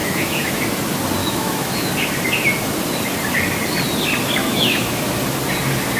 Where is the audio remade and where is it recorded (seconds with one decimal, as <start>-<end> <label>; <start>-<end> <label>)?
0.0-0.6 remade; 0.6-1.2 recorded; 1.2-1.9 remade; 1.9-4.4 recorded; 4.4-5.1 remade; 5.1-6.0 recorded